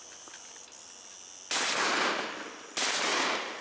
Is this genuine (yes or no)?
yes